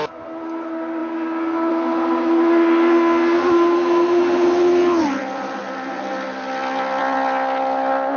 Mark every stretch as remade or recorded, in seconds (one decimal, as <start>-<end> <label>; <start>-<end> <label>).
0.0-8.2 recorded